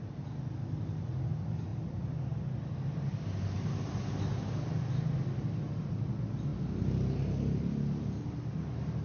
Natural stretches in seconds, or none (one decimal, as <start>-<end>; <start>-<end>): 0.0-9.0